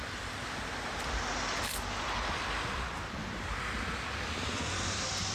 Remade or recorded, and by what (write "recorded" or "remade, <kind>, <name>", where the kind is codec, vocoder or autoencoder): recorded